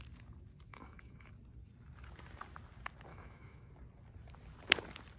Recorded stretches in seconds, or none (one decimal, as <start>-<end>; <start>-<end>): 0.0-0.7; 1.3-3.1; 3.7-5.2